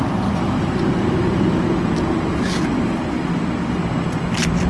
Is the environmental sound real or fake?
real